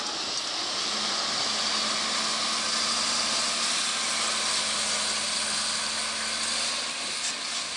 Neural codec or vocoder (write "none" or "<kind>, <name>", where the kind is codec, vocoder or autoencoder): none